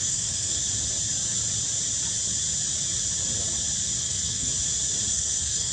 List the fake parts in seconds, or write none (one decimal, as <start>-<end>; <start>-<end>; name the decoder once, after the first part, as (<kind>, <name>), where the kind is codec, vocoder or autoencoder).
0.0-0.6 (codec, SNAC); 4.0-4.5; 5.1-5.7